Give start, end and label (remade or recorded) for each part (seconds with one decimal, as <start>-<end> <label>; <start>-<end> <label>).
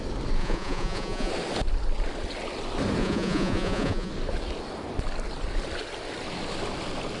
0.0-0.4 recorded; 0.4-1.3 remade; 1.3-3.0 recorded; 3.0-4.1 remade; 4.1-7.2 recorded